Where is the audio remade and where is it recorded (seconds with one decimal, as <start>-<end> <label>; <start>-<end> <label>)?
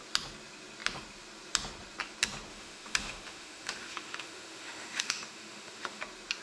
0.0-2.5 recorded; 2.5-6.0 remade; 6.0-6.4 recorded